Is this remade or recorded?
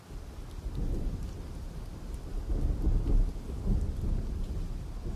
recorded